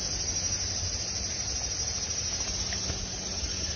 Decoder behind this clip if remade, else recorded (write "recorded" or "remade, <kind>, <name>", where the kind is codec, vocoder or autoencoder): recorded